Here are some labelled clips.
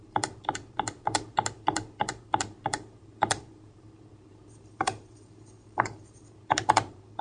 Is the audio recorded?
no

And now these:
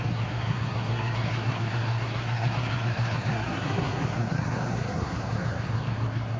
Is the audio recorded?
no